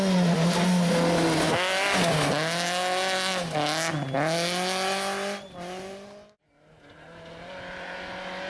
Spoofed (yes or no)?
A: no